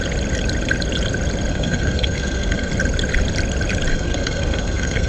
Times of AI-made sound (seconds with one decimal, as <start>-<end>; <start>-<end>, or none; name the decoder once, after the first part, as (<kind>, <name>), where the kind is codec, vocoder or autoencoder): 1.5-2.7 (codec, SNAC); 3.9-5.1